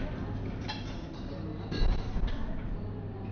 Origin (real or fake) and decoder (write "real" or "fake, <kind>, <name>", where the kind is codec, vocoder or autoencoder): real